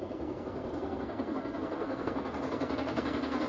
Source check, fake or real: fake